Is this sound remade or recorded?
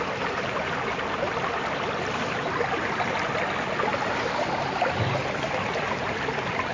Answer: recorded